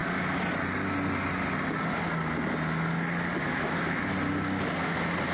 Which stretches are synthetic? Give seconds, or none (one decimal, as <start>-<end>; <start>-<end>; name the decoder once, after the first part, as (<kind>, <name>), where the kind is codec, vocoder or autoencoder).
3.4-4.0 (autoencoder, DAC-VAE)